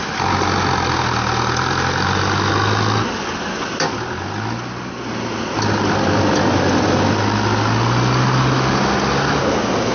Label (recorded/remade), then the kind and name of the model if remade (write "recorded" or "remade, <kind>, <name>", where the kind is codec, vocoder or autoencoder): recorded